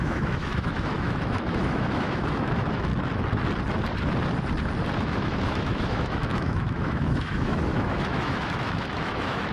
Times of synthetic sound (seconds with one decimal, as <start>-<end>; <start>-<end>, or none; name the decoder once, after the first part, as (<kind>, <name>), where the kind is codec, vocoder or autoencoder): 0.0-2.9 (autoencoder, DAC-VAE); 5.0-9.5